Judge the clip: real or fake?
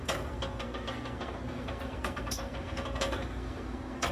fake